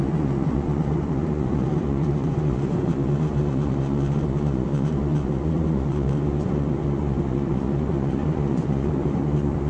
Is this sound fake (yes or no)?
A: yes